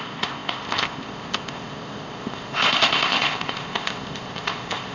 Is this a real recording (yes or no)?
no